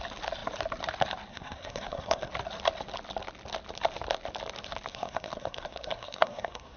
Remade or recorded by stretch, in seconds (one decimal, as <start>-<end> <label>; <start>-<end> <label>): 0.0-1.3 recorded; 1.3-2.3 remade; 2.3-4.9 recorded; 4.9-6.8 remade

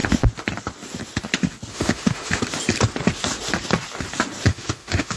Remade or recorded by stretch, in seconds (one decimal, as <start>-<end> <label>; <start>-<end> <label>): 0.0-1.7 recorded; 1.7-2.4 remade; 2.4-4.5 recorded; 4.5-5.2 remade

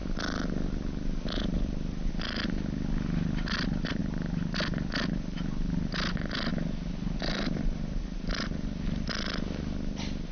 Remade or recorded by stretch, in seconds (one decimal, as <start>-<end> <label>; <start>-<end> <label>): 0.0-10.3 recorded

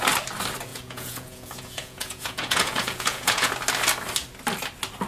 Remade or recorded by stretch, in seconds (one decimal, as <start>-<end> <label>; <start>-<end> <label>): 0.0-0.7 recorded; 0.7-3.5 remade; 3.5-5.1 recorded